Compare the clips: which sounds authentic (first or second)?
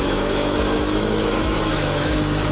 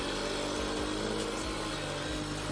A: second